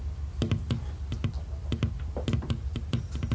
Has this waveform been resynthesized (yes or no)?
no